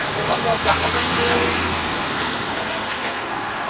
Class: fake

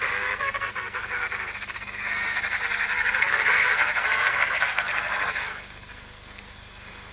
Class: fake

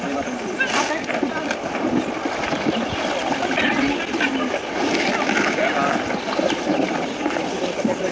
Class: real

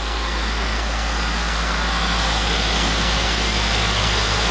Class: fake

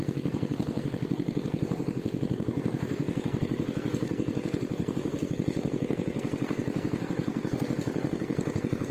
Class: fake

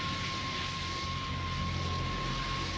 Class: real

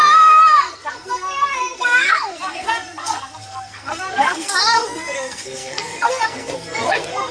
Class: fake